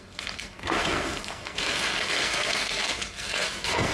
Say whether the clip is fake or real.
fake